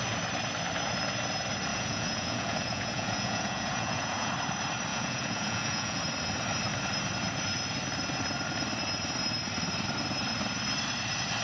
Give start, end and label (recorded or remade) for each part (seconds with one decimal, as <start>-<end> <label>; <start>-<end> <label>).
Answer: 0.0-1.7 recorded; 1.7-4.3 remade; 4.3-4.9 recorded; 4.9-6.0 remade; 6.0-11.4 recorded